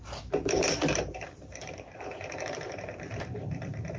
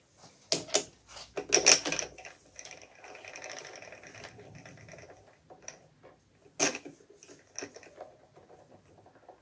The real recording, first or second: second